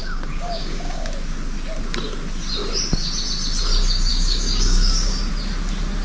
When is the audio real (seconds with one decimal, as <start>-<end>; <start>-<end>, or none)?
1.1-4.1; 5.3-6.0